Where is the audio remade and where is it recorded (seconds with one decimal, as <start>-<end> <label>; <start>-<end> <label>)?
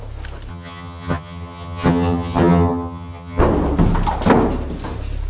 0.0-0.5 recorded; 0.5-3.4 remade; 3.4-5.3 recorded